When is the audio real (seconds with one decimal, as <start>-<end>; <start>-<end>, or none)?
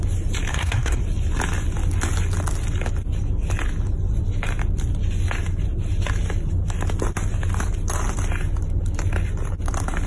0.0-0.5; 1.0-10.1